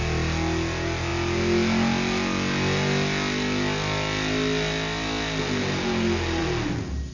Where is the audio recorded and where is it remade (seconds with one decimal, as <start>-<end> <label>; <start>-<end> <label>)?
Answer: 0.0-7.1 recorded